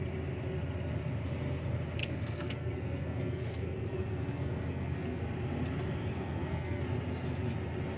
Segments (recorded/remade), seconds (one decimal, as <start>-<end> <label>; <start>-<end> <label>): 0.0-2.0 recorded; 2.0-5.2 remade; 5.2-6.1 recorded; 6.1-6.8 remade; 6.8-8.0 recorded